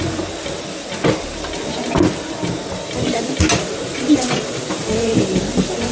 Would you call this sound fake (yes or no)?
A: no